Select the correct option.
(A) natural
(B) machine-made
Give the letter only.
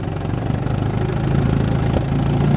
A